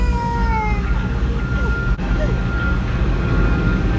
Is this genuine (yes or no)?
no